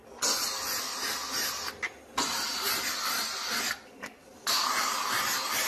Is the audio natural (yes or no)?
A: yes